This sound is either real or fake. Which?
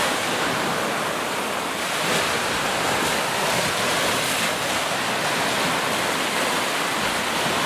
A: real